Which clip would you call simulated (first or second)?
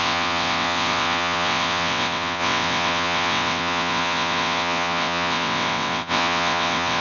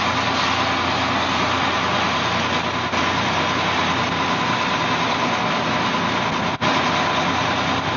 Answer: first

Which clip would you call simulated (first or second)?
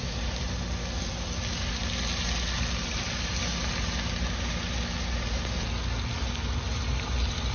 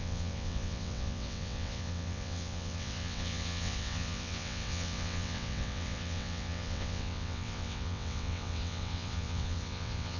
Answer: second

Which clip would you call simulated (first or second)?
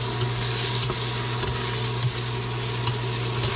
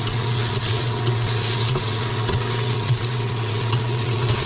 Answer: second